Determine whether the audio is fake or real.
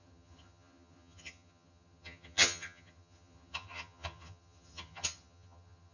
fake